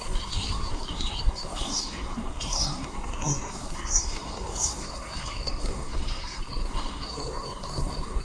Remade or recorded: remade